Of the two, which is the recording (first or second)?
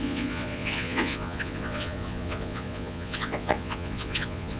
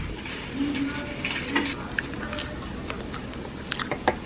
second